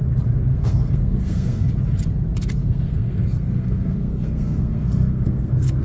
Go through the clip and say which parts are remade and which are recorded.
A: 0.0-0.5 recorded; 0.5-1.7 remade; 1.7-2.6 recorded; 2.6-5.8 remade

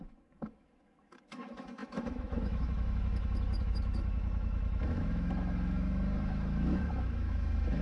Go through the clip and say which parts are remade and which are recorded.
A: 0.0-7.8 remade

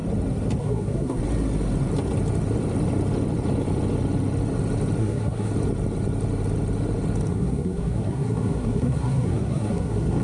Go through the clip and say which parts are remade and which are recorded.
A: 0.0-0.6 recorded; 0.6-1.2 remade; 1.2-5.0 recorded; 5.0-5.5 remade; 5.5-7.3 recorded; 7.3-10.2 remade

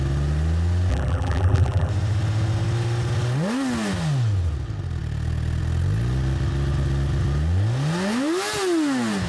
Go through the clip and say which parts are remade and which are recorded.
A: 0.0-0.9 recorded; 0.9-1.9 remade; 1.9-9.3 recorded

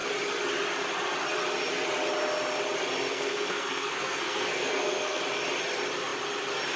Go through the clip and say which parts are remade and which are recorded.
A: 0.0-3.1 recorded; 3.1-5.2 remade; 5.2-6.8 recorded

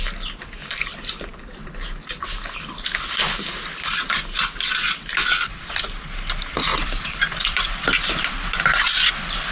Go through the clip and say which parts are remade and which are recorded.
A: 0.0-6.7 recorded; 6.7-9.1 remade; 9.1-9.5 recorded

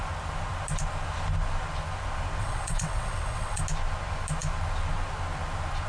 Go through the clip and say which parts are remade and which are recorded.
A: 0.0-2.4 recorded; 2.4-3.6 remade; 3.6-5.9 recorded